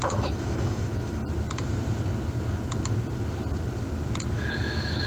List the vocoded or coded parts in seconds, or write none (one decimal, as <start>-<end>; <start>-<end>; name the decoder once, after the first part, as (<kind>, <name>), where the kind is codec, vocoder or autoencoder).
0.0-1.2 (autoencoder, DAC-VAE); 4.3-5.1